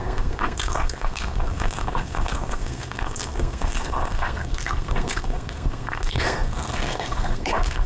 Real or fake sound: fake